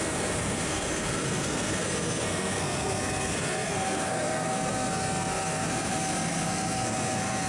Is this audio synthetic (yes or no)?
yes